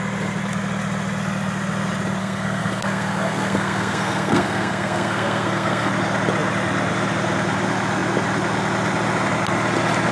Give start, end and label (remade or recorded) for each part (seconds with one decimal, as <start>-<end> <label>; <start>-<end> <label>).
0.0-2.2 recorded; 2.2-5.9 remade; 5.9-10.1 recorded